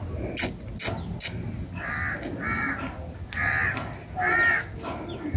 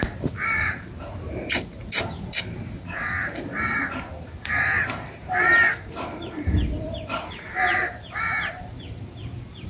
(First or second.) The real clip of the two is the first